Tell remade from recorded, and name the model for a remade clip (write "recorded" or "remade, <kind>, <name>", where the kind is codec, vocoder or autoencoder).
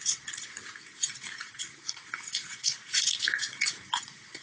remade, vocoder, Vocos